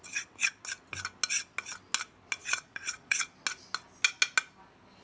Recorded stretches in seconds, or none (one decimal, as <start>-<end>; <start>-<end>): 0.0-2.4; 3.2-5.0